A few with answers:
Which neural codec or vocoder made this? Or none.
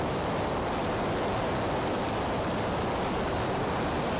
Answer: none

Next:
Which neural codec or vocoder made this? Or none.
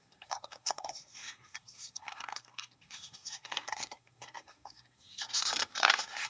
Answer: codec, SNAC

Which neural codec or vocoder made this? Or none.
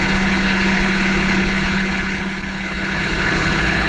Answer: codec, HILCodec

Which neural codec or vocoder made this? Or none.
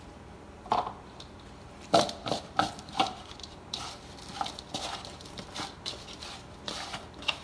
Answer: vocoder, BigVGAN v2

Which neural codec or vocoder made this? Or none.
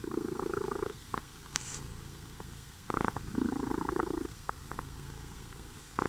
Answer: codec, SNAC